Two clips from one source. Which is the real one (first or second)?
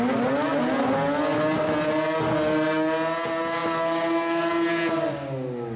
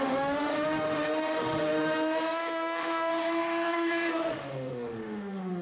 first